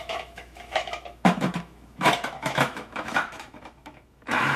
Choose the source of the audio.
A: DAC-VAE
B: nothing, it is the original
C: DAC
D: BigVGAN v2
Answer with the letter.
A